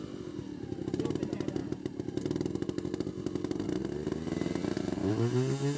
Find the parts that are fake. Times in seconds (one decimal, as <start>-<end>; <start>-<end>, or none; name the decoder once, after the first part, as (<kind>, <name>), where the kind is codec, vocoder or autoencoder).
none